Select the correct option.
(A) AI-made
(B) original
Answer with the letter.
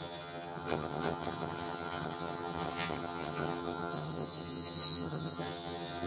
A